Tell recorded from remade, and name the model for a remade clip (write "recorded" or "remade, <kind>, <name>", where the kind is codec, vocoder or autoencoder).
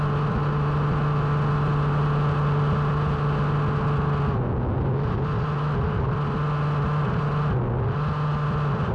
recorded